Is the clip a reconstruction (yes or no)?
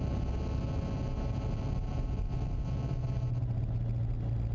no